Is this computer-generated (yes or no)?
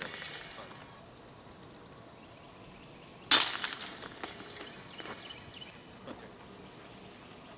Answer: no